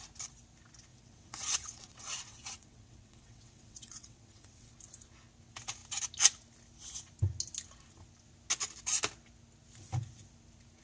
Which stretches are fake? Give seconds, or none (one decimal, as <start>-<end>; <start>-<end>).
0.9-4.7